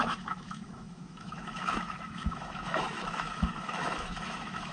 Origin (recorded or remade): remade